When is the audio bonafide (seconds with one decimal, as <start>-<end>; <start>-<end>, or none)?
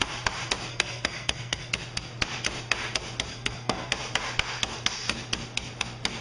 0.0-0.7; 1.7-3.3; 3.9-6.2